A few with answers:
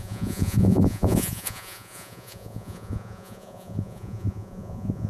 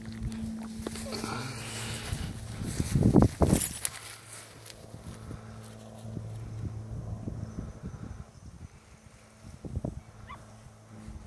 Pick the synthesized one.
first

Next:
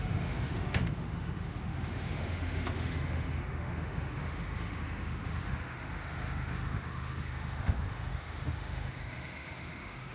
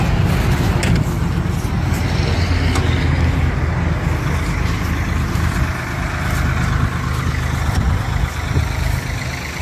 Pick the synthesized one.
first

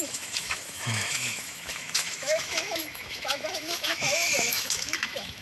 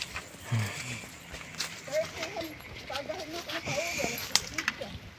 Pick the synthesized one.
first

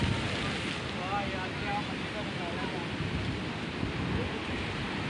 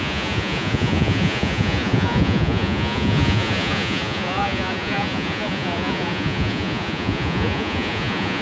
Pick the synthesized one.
second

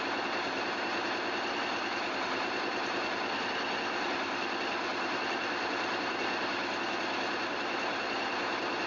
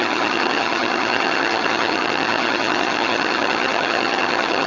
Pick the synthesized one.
second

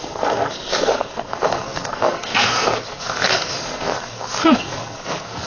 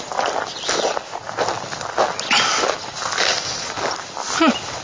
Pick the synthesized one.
first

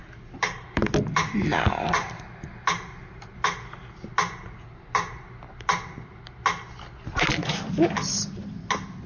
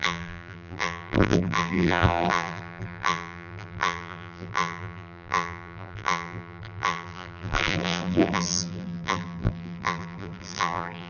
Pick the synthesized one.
second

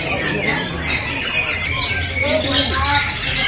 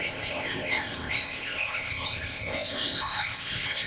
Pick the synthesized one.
second